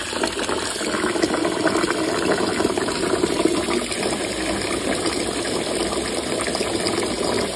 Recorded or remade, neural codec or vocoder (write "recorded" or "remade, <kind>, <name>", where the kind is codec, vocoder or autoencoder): recorded